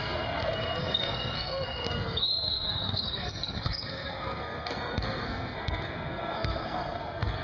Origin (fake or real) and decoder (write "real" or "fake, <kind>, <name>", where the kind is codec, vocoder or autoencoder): fake, codec, SNAC